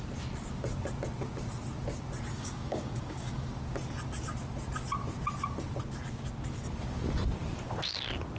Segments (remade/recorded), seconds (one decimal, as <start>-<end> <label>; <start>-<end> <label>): 0.0-2.3 recorded; 2.3-3.5 remade; 3.5-8.4 recorded